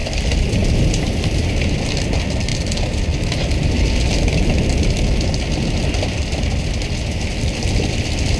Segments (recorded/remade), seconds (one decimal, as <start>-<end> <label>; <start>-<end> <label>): 0.0-8.4 recorded